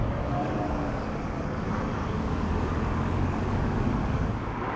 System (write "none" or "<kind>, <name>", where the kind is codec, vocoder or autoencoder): codec, DAC